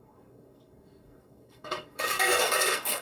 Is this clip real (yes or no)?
no